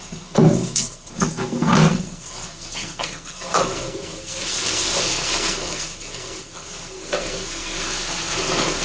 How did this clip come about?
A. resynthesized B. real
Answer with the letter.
A